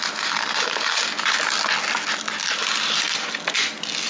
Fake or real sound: real